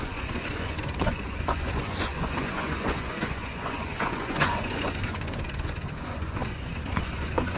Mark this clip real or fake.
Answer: fake